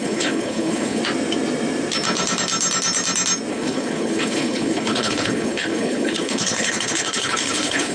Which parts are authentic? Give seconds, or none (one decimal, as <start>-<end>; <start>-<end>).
1.0-3.5